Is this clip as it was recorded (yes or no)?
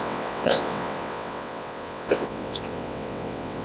no